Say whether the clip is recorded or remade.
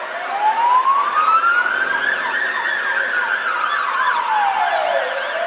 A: recorded